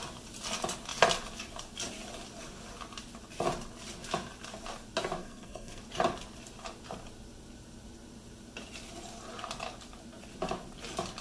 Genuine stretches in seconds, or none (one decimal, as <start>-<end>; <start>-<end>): 0.0-5.2; 5.8-11.2